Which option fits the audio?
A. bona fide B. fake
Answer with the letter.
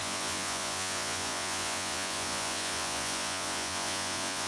B